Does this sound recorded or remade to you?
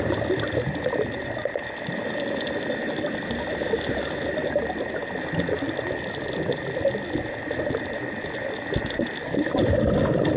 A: recorded